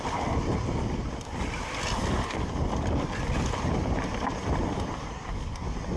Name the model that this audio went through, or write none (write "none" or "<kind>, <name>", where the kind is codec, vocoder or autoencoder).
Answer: none